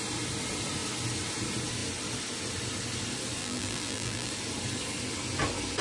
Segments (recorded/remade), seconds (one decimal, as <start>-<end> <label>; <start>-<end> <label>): 0.0-3.4 recorded; 3.4-4.3 remade; 4.3-5.8 recorded